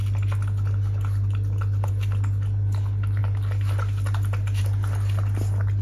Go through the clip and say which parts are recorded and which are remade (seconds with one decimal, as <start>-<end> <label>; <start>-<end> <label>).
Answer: 0.0-5.8 recorded